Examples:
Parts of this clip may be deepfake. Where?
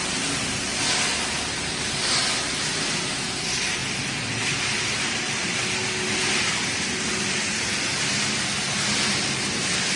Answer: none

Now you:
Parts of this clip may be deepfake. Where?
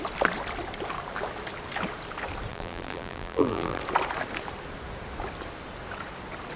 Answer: 2.5-3.8 (vocoder, BigVGAN v2)